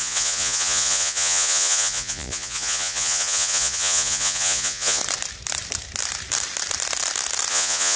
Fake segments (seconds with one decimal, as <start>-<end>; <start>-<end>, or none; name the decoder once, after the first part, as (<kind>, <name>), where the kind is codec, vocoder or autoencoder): 0.0-5.0 (vocoder, Vocos); 7.5-8.0